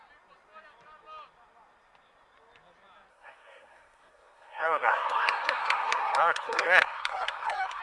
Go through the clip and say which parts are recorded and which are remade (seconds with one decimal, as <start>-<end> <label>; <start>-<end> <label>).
0.0-3.1 recorded; 3.1-7.8 remade